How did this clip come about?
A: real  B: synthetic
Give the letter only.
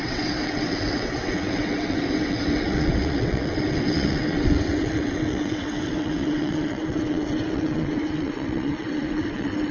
B